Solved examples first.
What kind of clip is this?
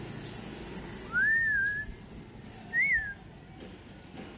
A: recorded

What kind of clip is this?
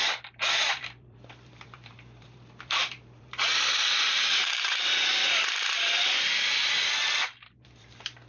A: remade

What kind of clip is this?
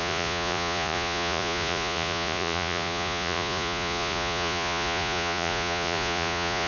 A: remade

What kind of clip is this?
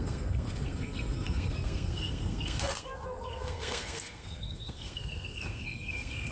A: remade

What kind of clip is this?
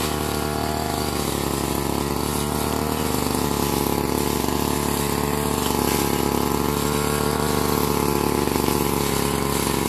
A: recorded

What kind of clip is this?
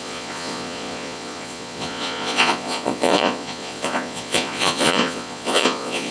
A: remade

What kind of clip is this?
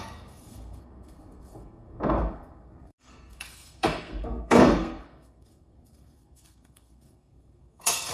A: remade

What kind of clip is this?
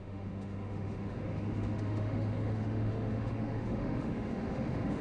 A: remade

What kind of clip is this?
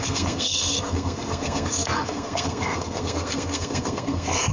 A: remade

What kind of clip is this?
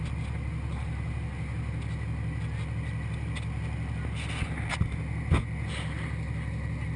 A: recorded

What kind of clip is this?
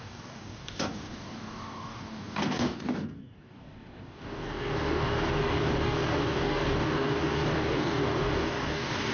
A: remade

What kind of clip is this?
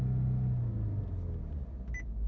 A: recorded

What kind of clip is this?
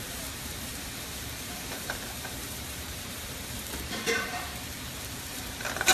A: remade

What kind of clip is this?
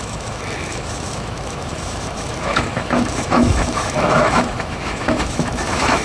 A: remade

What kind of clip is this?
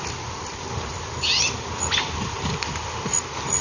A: recorded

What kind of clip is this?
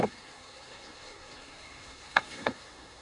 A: remade